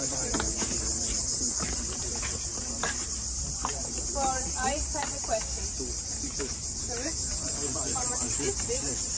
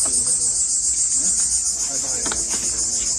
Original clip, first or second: second